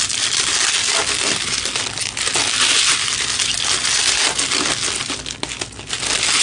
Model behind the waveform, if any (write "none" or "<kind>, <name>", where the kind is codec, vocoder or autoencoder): none